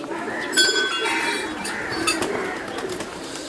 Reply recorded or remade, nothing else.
remade